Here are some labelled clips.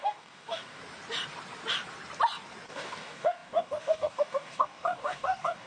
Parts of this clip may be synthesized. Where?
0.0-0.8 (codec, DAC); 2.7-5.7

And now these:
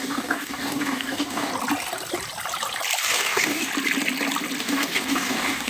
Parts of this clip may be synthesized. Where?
0.0-1.5 (codec, DAC); 3.0-3.7; 4.6-5.7

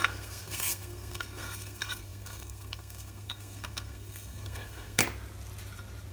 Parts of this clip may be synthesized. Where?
0.0-5.0 (codec, SNAC)

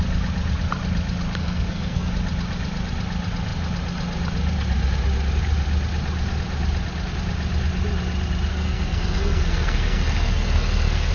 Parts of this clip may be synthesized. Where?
1.4-2.1 (codec, SNAC); 8.5-11.1

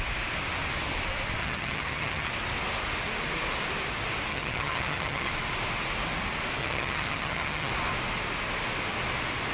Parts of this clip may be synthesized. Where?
1.4-2.3 (vocoder, HiFi-GAN); 4.3-5.3; 6.6-7.7

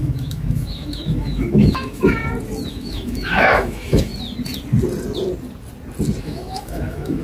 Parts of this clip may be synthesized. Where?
0.0-2.2 (autoencoder, DAC-VAE); 2.7-4.1; 6.2-7.2

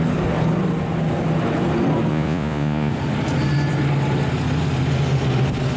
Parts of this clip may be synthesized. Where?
2.1-2.9 (vocoder, Vocos)

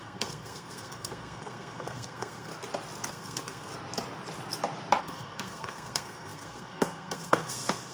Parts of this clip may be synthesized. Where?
0.0-2.5 (codec, SNAC); 3.1-3.7; 5.0-7.9